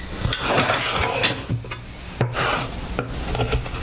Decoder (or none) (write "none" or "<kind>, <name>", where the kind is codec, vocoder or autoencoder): none